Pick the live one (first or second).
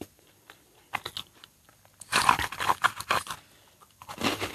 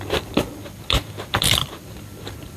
first